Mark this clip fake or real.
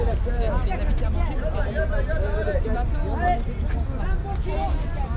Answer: real